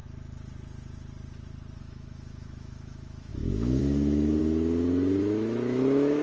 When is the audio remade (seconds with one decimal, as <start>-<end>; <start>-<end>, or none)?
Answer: 1.8-4.4; 5.2-6.2